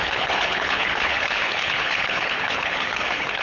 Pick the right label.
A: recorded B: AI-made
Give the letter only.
B